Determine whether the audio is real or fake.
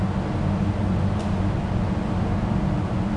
real